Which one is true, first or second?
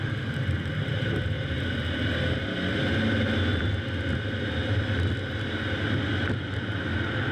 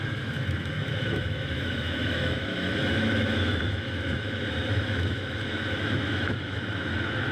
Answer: first